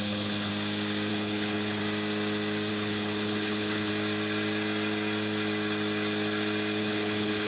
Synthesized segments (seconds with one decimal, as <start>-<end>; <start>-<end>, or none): 0.0-0.5; 1.1-1.8; 2.7-3.9; 6.8-7.5

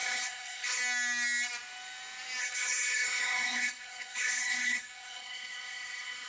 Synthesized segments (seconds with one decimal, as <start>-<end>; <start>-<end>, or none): 0.0-0.8; 2.4-6.3

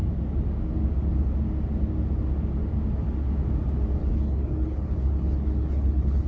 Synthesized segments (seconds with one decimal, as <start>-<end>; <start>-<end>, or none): 4.0-6.3

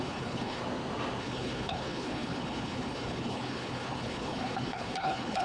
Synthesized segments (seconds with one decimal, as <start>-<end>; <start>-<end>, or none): 0.0-0.6; 1.2-5.4

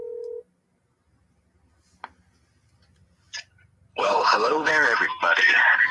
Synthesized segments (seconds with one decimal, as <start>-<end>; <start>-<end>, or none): 3.9-4.7

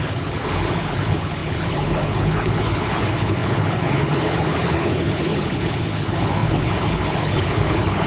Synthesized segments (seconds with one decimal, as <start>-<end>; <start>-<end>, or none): 0.0-8.1

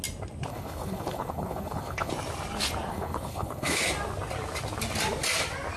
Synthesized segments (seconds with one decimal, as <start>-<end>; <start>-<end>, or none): 0.5-2.1; 2.9-3.8

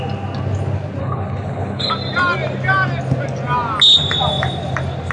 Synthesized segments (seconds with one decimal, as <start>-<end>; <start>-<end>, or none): 1.0-1.9